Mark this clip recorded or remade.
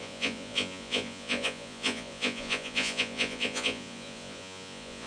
remade